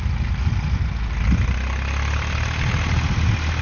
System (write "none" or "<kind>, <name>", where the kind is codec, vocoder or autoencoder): none